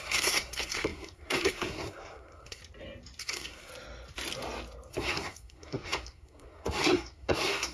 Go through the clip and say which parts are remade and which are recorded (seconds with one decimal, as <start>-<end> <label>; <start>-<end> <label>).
0.0-2.6 remade; 2.6-3.2 recorded; 3.2-3.7 remade; 3.7-4.9 recorded; 4.9-7.7 remade